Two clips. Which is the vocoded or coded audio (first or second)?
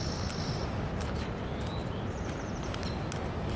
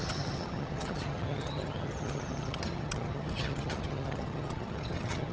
second